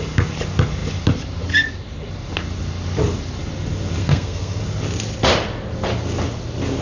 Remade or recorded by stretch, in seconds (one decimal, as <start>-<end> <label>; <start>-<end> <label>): 0.0-4.0 recorded; 4.0-4.6 remade; 4.6-6.8 recorded